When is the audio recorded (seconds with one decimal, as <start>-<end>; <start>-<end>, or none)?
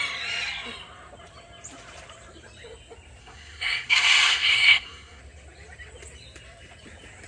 0.0-3.2; 5.2-7.3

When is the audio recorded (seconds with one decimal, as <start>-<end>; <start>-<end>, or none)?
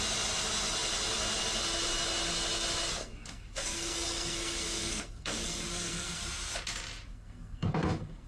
0.0-3.0; 6.2-7.1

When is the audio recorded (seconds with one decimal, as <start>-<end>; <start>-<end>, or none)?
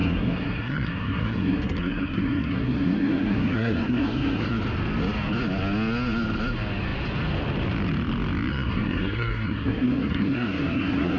4.6-8.5